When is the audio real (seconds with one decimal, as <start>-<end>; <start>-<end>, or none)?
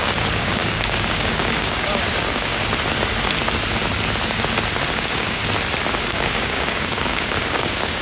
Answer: 2.6-4.9; 5.4-6.0